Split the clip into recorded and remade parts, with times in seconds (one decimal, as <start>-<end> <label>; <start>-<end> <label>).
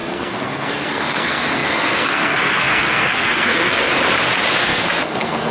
0.0-3.9 remade; 3.9-4.6 recorded; 4.6-5.5 remade